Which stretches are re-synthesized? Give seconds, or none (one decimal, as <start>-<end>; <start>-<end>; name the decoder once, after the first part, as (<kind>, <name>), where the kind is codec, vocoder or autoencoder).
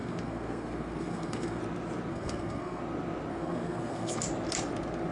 0.0-1.6 (codec, SNAC); 2.1-2.8; 3.3-4.2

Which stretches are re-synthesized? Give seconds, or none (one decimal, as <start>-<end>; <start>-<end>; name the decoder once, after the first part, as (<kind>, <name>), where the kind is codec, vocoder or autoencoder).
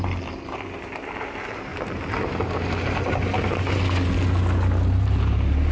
none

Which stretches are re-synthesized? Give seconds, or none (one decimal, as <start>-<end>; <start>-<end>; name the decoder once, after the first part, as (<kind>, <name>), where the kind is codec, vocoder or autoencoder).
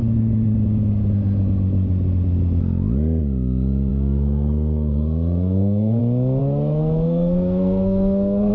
3.9-6.0 (codec, SNAC); 6.4-8.5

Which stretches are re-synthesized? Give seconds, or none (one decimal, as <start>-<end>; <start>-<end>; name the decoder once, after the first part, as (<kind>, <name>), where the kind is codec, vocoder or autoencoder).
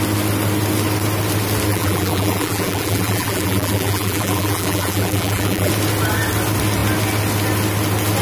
1.7-5.7 (vocoder, BigVGAN v2)